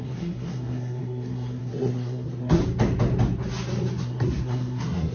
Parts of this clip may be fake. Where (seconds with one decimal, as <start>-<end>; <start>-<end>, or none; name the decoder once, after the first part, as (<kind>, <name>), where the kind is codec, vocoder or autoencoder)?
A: 0.0-2.6 (codec, SNAC); 4.0-5.1